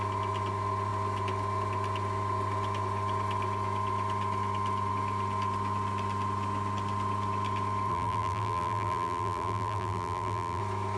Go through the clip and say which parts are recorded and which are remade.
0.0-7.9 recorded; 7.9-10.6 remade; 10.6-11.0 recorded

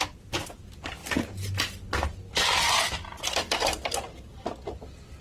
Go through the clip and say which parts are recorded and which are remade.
0.0-5.2 recorded

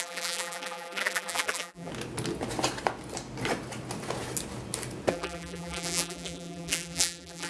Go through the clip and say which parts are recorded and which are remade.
0.0-1.9 remade; 1.9-5.1 recorded; 5.1-7.5 remade

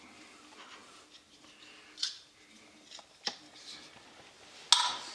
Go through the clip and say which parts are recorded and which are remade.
0.0-5.1 recorded

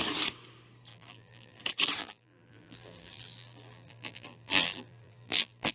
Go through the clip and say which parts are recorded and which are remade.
0.0-0.9 recorded; 0.9-1.6 remade; 1.6-2.0 recorded; 2.0-5.7 remade